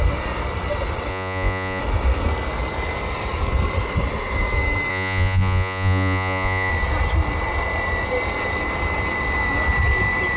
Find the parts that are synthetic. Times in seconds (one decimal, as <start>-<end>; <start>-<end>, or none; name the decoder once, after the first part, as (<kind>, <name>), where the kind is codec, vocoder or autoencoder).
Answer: 1.1-1.8 (vocoder, Vocos); 4.9-6.7